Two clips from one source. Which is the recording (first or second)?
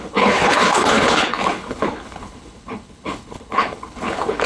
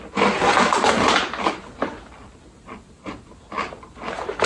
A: second